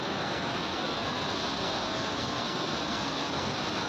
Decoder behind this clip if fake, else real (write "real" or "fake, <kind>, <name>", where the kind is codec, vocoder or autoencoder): fake, codec, SNAC